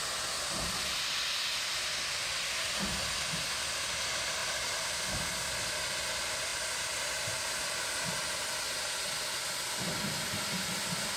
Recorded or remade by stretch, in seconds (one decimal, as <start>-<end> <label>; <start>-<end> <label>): 0.0-4.4 recorded; 4.4-5.2 remade; 5.2-11.2 recorded